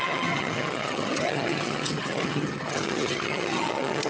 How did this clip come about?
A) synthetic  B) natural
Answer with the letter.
A